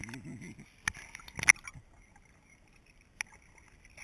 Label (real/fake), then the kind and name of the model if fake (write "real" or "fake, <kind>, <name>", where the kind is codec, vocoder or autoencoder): real